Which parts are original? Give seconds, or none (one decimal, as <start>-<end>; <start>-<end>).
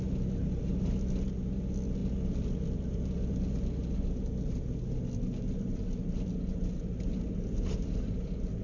0.0-8.6